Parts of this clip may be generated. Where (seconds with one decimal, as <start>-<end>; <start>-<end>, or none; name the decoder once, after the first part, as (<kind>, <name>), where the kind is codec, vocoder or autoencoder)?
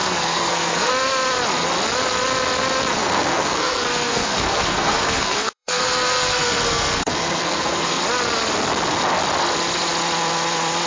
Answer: 0.0-0.9 (codec, SNAC); 2.9-8.0